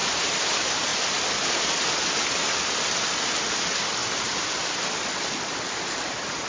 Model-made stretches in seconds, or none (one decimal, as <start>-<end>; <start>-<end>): 0.0-0.5; 4.0-4.9